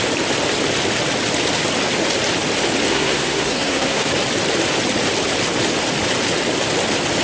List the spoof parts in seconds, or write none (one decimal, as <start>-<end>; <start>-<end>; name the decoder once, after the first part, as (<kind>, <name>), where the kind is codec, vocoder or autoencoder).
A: 2.9-4.1 (codec, SNAC)